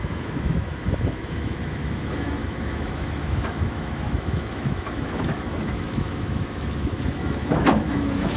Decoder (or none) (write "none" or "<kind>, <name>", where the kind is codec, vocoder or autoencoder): autoencoder, DAC-VAE